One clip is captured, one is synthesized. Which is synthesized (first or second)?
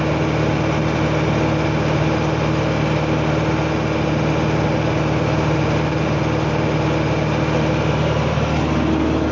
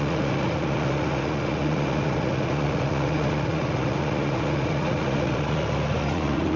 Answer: second